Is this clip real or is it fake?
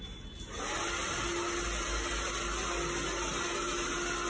real